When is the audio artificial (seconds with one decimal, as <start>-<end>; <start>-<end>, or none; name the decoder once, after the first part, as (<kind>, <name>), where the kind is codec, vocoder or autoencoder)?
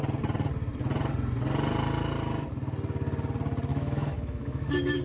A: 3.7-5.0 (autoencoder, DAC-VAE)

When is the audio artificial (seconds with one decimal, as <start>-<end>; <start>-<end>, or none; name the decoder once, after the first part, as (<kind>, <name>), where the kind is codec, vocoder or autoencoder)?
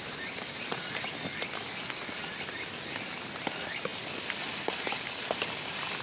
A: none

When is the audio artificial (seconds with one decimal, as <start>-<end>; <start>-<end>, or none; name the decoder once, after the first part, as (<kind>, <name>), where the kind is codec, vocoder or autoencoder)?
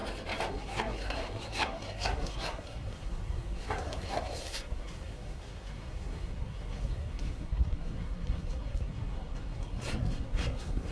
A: 0.5-10.9 (codec, SNAC)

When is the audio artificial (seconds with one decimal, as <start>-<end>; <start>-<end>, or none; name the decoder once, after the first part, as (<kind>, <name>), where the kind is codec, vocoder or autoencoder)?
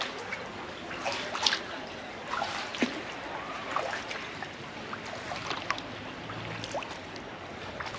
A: none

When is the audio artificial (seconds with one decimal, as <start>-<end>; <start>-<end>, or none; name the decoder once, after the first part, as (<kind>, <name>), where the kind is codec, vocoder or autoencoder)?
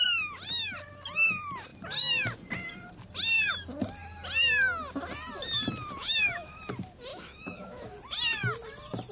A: 6.0-6.6 (autoencoder, DAC-VAE); 7.1-7.9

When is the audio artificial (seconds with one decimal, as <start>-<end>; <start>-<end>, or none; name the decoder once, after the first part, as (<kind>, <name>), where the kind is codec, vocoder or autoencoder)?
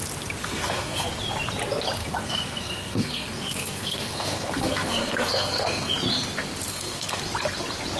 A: 0.4-1.1 (codec, SNAC); 2.0-5.9; 6.7-7.2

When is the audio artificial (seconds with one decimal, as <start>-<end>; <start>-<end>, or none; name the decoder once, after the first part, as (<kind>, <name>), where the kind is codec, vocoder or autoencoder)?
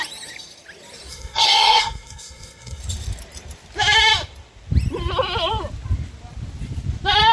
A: 1.1-2.8 (codec, SNAC)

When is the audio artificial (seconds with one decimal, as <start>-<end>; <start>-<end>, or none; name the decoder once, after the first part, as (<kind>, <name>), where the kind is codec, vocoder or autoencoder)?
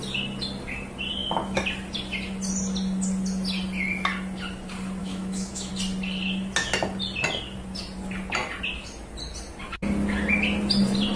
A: 5.0-5.7 (autoencoder, DAC-VAE)